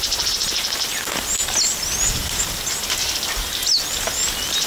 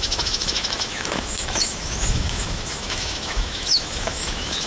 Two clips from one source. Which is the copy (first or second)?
second